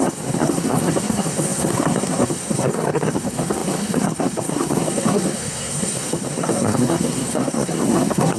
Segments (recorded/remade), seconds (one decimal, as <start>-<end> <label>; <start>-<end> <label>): 0.0-8.4 remade